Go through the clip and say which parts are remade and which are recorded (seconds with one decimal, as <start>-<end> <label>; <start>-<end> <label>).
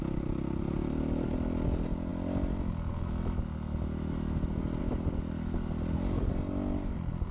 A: 0.0-7.3 recorded